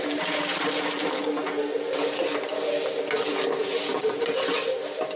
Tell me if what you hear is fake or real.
real